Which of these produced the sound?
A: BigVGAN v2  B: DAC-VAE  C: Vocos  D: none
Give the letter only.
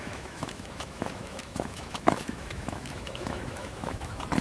B